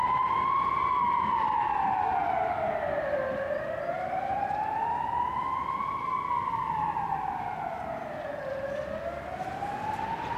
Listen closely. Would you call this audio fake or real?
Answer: real